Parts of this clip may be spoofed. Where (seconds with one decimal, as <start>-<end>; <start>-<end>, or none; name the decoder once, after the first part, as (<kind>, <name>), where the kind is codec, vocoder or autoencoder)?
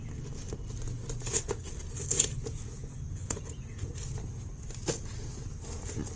2.1-3.9 (vocoder, Vocos)